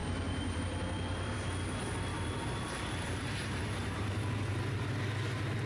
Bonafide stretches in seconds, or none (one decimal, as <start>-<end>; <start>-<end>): 0.6-2.1; 4.8-5.7